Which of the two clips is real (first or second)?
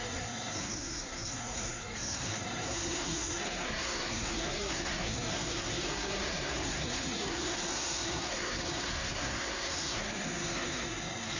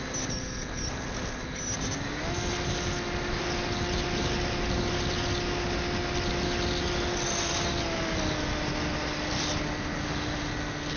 second